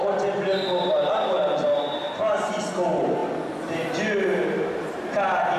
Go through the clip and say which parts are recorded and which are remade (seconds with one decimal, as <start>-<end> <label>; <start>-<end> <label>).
0.0-2.0 recorded; 2.0-2.5 remade; 2.5-5.6 recorded